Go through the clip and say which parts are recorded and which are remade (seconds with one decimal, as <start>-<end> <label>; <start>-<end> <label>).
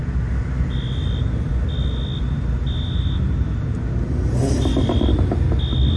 0.0-6.0 recorded